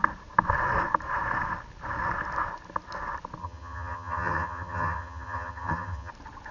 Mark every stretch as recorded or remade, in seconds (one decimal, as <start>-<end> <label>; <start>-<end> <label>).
0.0-3.4 recorded; 3.4-6.1 remade; 6.1-6.5 recorded